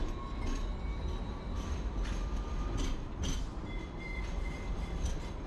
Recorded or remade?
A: recorded